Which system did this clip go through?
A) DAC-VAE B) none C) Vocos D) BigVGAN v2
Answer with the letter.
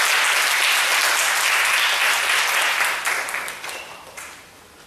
B